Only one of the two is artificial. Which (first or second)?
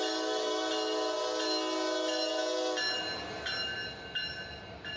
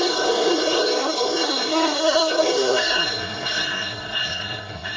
second